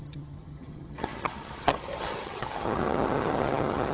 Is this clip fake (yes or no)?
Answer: yes